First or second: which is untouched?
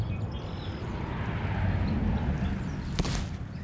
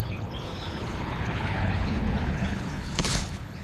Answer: first